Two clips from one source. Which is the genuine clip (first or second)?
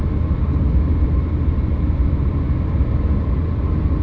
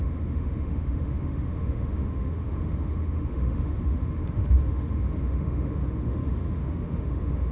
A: first